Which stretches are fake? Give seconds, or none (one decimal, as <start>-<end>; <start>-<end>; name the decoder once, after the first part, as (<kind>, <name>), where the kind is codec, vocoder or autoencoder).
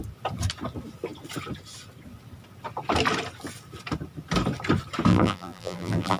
5.1-6.2 (vocoder, BigVGAN v2)